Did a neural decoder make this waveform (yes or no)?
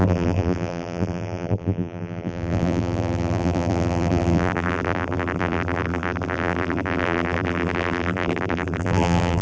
yes